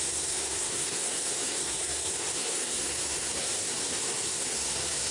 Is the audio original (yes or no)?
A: no